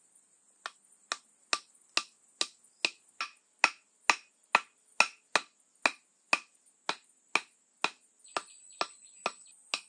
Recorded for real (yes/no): yes